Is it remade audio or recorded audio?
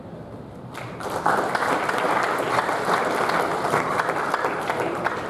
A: recorded